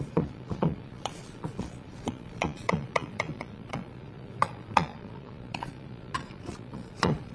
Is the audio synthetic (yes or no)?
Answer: yes